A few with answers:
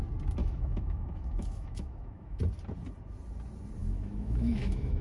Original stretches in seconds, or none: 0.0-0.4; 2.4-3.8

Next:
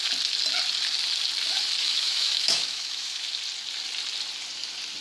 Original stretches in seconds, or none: 0.0-1.8; 3.4-5.0

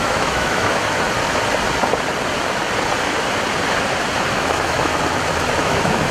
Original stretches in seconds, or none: 0.8-4.3; 4.9-5.6

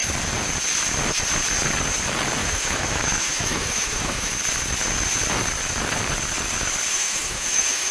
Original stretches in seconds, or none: 0.0-2.4; 4.3-6.9

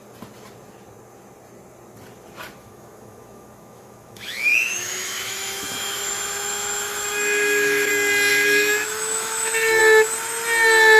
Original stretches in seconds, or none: 0.0-2.6; 7.9-8.3; 9.8-11.0

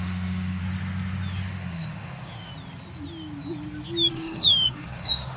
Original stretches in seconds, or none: 0.6-1.5; 2.5-4.1

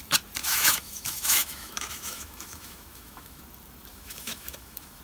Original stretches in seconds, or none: 0.0-0.4; 3.4-3.9